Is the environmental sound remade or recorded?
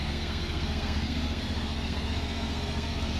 remade